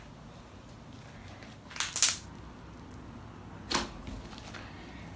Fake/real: real